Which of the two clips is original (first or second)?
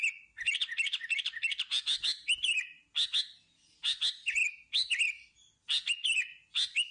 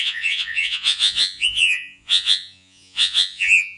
first